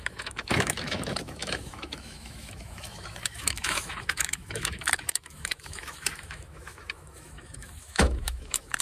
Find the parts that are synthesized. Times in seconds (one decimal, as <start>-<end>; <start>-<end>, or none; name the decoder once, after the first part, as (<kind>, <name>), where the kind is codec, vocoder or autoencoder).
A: 0.0-8.8 (autoencoder, DAC-VAE)